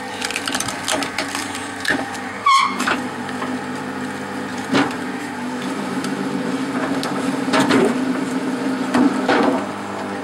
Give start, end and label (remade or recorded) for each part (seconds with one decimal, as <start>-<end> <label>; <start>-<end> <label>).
0.0-1.4 recorded; 1.4-3.2 remade; 3.2-4.5 recorded; 4.5-9.4 remade; 9.4-10.2 recorded

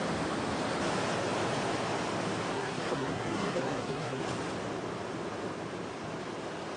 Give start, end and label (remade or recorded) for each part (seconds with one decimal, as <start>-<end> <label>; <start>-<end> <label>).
0.0-2.5 recorded; 2.5-4.2 remade; 4.2-6.8 recorded

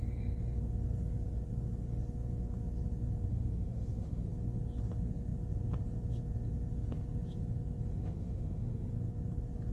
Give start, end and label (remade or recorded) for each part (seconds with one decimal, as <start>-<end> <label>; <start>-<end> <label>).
0.0-3.3 recorded; 3.3-4.3 remade; 4.3-7.9 recorded; 7.9-8.9 remade; 8.9-9.7 recorded

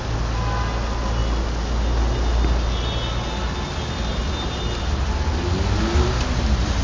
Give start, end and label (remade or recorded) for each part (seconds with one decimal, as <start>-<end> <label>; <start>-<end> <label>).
0.0-6.8 recorded

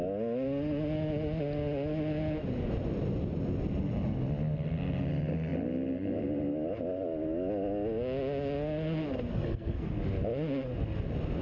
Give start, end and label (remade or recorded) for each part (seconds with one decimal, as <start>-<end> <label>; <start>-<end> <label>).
0.0-9.3 recorded; 9.3-10.0 remade; 10.0-11.4 recorded

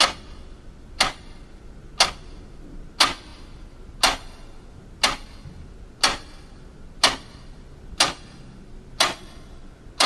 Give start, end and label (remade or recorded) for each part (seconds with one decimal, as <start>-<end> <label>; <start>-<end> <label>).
0.0-10.1 recorded

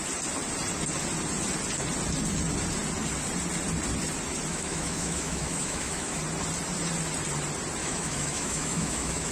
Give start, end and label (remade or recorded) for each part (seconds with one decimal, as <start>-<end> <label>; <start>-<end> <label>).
0.0-4.5 recorded; 4.5-6.2 remade; 6.2-7.8 recorded; 7.8-9.3 remade